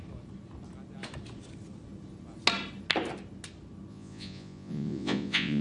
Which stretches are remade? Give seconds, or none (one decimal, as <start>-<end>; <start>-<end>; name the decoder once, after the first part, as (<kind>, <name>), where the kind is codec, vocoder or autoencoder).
3.9-5.6 (vocoder, Vocos)